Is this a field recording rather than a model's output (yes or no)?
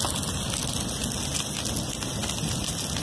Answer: yes